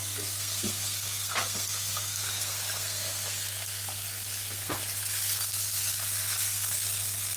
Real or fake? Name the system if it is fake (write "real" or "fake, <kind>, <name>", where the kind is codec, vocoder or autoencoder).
fake, codec, SNAC